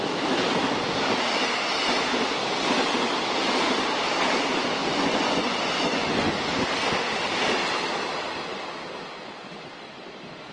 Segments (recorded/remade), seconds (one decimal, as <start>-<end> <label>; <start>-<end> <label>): 0.0-4.8 recorded; 4.8-6.3 remade; 6.3-10.5 recorded